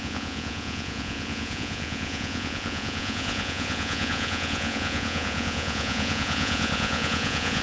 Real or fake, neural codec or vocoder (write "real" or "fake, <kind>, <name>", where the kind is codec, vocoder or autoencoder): fake, vocoder, Vocos